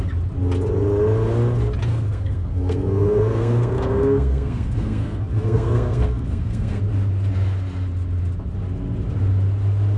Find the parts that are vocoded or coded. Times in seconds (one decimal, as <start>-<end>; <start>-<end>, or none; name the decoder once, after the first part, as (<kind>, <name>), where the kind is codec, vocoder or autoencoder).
1.9-6.8 (codec, SNAC)